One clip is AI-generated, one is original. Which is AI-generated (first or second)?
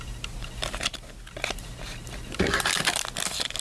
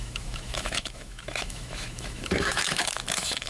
second